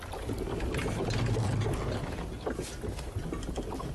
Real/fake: real